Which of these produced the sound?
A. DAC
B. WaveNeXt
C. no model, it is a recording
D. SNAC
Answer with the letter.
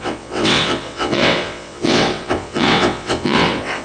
B